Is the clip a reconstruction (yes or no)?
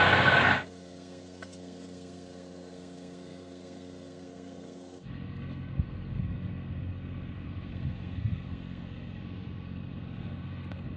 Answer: yes